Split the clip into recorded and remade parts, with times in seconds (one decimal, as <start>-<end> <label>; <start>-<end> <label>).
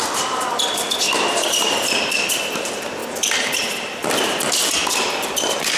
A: 0.0-3.0 remade; 3.0-3.6 recorded; 3.6-4.0 remade; 4.0-4.7 recorded; 4.7-5.8 remade